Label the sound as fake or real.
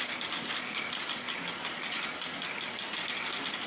real